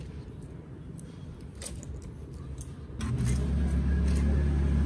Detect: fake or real real